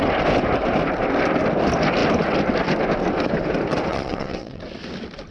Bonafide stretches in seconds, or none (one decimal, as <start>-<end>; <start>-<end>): 0.0-3.9; 4.6-5.3

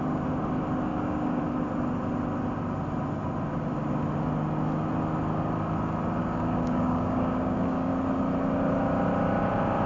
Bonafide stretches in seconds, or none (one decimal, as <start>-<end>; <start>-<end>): 0.0-0.9; 1.4-6.2; 7.9-9.9

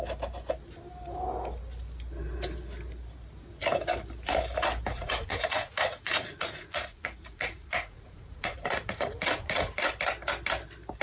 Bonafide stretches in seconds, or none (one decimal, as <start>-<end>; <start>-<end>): 0.0-4.9; 9.9-11.0

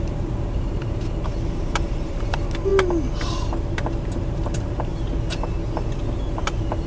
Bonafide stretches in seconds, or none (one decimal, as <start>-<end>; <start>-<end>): 2.7-4.0; 4.9-6.3